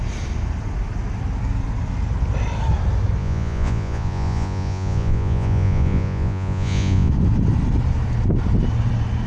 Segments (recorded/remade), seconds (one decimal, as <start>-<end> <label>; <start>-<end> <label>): 0.0-3.2 recorded; 3.2-7.1 remade; 7.1-9.3 recorded